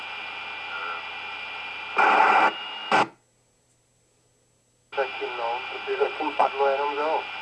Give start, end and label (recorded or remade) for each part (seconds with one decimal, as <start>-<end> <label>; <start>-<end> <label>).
0.0-5.9 recorded; 5.9-6.5 remade; 6.5-7.4 recorded